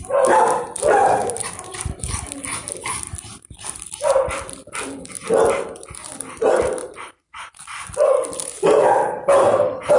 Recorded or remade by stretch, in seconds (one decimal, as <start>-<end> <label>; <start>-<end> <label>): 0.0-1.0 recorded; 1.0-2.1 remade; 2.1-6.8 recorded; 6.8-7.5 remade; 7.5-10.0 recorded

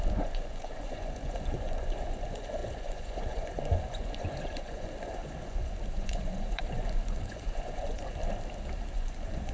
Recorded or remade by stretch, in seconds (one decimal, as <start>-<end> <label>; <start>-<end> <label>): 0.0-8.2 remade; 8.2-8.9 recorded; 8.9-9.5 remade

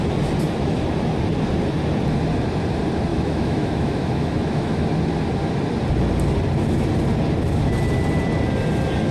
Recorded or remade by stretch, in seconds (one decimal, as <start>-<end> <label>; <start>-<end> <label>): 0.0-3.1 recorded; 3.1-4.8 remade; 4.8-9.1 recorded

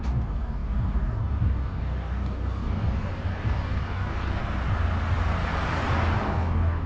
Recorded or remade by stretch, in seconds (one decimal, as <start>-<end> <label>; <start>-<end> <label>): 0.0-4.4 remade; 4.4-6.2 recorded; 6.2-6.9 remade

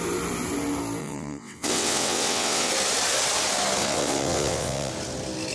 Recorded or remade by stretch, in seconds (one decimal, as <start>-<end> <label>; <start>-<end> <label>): 0.0-1.0 recorded; 1.0-2.7 remade; 2.7-3.8 recorded; 3.8-4.9 remade; 4.9-5.5 recorded

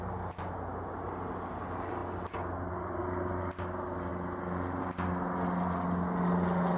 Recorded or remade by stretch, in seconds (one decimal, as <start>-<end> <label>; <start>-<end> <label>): 0.0-6.8 recorded